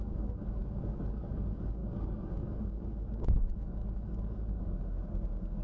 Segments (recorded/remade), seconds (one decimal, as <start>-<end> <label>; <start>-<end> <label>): 0.0-5.6 remade